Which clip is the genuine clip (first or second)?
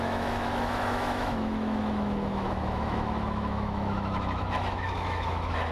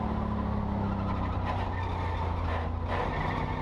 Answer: second